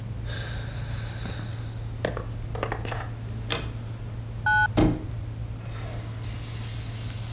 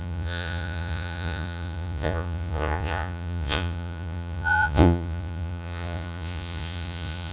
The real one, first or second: first